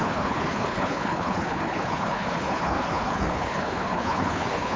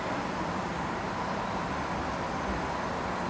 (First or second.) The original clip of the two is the second